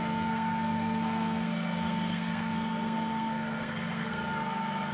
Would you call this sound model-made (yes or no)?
yes